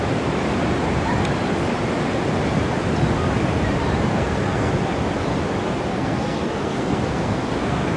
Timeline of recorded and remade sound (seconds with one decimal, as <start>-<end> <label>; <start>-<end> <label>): 0.0-4.1 recorded; 4.1-4.7 remade; 4.7-5.9 recorded; 5.9-8.0 remade

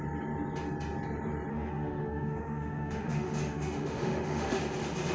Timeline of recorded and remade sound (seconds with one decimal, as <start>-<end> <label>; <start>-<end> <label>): 0.0-1.5 recorded; 1.5-4.6 remade; 4.6-5.1 recorded

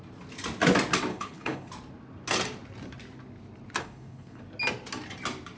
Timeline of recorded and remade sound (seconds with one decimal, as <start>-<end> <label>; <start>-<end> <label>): 0.0-1.1 recorded; 1.1-1.7 remade; 1.7-3.8 recorded; 3.8-4.4 remade; 4.4-5.6 recorded

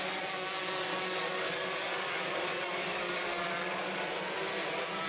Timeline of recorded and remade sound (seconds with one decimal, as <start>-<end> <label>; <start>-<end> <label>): 0.0-0.9 recorded; 0.9-4.0 remade; 4.0-5.1 recorded